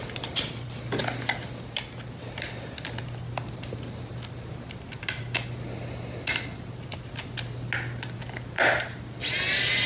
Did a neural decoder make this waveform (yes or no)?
no